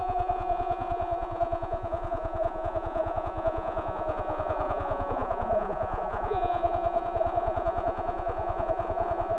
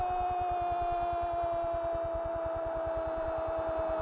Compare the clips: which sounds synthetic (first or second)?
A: first